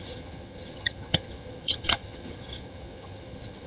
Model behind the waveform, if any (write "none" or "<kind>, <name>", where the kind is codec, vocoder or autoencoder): vocoder, HiFi-GAN